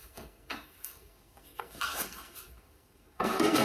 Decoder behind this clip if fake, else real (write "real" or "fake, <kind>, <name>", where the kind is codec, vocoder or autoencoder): fake, codec, SNAC